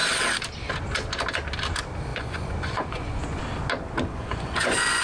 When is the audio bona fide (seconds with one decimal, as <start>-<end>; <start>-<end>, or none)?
0.0-2.1; 3.4-4.1